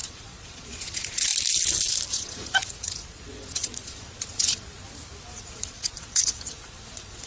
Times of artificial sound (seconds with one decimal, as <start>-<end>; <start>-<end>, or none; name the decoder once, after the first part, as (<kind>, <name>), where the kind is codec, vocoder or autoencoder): 0.0-1.3 (vocoder, Vocos); 2.1-4.9; 5.5-7.3